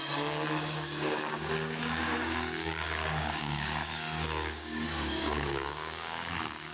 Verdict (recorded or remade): remade